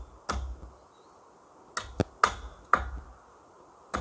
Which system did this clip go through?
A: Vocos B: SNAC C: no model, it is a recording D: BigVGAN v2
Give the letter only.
C